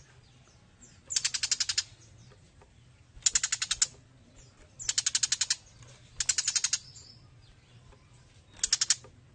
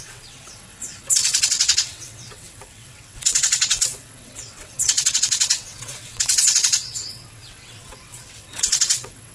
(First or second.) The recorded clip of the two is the first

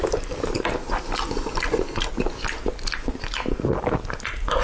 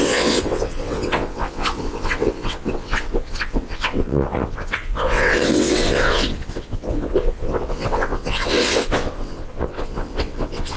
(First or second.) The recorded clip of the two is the first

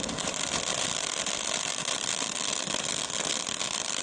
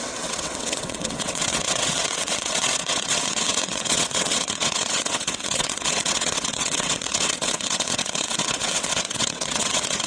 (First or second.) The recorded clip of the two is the first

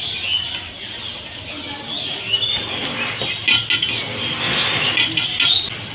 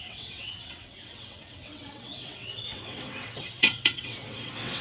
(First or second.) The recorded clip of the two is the first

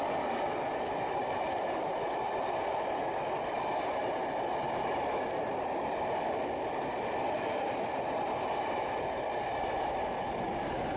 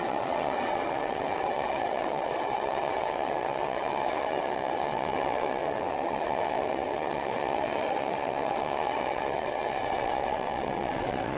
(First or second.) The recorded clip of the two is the first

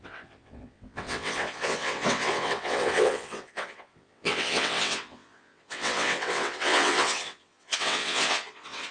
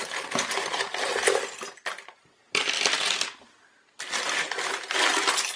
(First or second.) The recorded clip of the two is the second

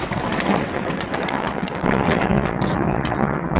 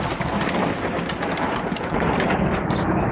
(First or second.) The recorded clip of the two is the second